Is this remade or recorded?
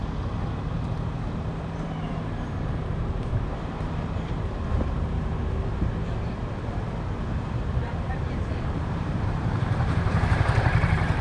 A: remade